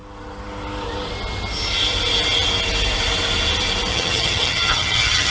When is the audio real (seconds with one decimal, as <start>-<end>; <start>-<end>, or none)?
0.0-3.9